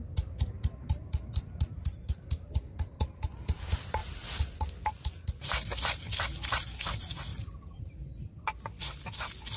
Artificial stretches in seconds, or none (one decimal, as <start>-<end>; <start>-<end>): none